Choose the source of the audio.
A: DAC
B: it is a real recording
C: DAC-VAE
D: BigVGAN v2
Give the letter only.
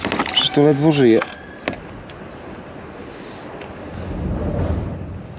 B